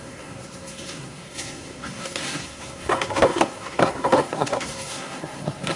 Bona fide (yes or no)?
no